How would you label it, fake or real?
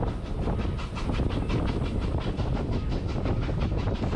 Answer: real